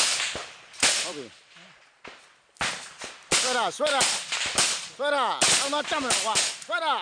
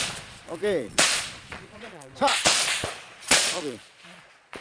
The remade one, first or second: second